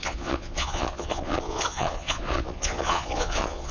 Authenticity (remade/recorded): remade